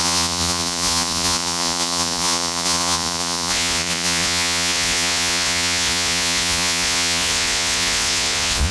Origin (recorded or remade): remade